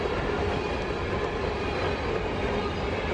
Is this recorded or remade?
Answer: recorded